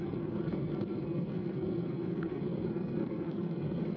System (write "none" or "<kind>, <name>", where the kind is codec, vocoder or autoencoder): codec, SNAC